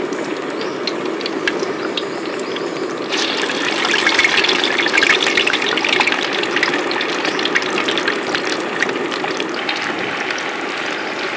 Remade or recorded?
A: recorded